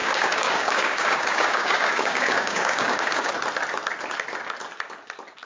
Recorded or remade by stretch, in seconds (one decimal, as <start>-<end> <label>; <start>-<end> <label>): 0.0-3.3 remade; 3.3-5.5 recorded